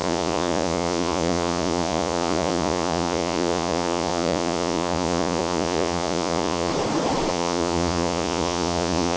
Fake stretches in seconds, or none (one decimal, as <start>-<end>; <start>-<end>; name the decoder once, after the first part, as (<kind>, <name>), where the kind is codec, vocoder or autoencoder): 0.0-6.7 (vocoder, Vocos); 7.3-9.2